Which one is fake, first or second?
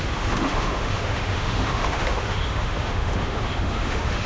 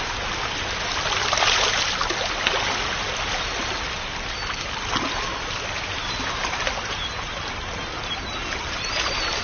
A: first